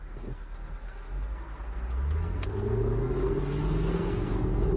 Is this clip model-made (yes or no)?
yes